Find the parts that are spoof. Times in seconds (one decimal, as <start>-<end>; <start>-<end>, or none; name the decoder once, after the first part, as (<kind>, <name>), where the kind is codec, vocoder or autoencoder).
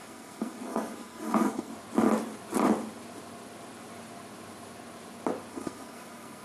0.0-1.7 (codec, SNAC); 5.5-6.4